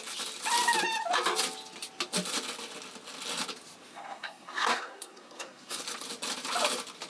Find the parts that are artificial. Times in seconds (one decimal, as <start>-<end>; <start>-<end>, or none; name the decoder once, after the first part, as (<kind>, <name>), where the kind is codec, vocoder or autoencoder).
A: 3.9-5.8 (codec, SNAC)